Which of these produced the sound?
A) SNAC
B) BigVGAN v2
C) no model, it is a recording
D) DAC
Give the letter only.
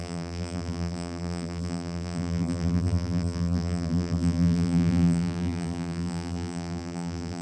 B